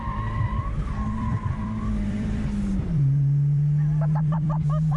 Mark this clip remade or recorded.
remade